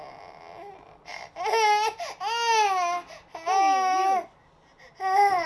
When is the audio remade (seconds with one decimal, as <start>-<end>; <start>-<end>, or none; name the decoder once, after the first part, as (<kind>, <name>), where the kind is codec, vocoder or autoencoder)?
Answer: none